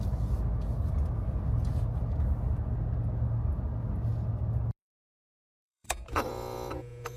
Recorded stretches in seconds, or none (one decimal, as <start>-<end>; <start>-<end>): 0.0-5.2

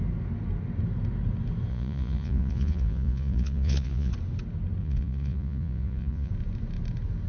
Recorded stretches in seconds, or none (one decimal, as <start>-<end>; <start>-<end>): 0.0-1.7; 4.1-4.8; 6.3-7.3

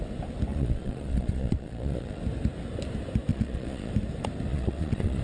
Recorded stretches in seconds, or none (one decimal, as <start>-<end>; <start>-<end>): 0.0-0.5; 2.2-3.3; 3.9-4.5

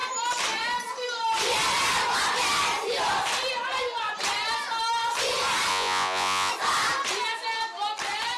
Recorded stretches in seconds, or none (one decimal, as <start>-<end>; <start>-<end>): 0.0-5.7; 6.5-8.4

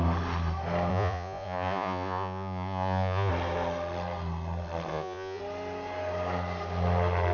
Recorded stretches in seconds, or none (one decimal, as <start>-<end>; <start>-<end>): 0.0-0.9; 3.3-4.9; 5.4-7.3

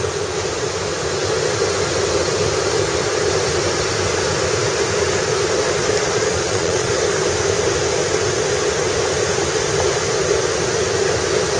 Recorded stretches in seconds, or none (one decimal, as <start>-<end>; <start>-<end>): 0.0-6.0; 6.9-11.6

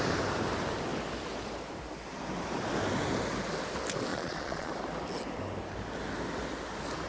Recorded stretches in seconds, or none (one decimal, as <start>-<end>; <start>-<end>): 0.0-4.1; 4.7-7.1

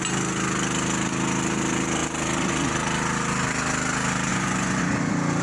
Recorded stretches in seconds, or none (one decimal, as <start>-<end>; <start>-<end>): 0.0-4.3; 4.8-5.4